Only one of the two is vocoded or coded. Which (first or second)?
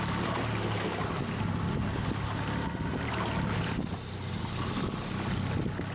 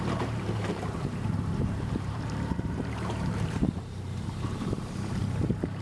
second